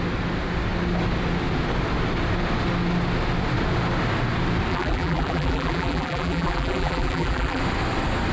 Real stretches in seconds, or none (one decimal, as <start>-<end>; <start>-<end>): 0.0-4.7; 7.6-8.3